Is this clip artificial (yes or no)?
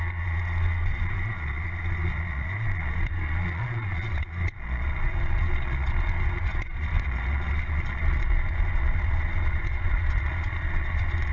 yes